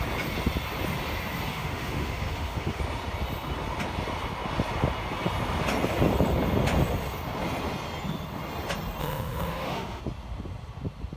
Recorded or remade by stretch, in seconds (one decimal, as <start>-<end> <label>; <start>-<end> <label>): 0.0-1.5 recorded; 1.5-2.8 remade; 2.8-9.0 recorded; 9.0-10.0 remade; 10.0-11.2 recorded